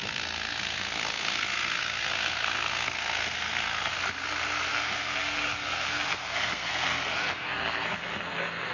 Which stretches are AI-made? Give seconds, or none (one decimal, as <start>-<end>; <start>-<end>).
0.0-3.9; 4.7-8.7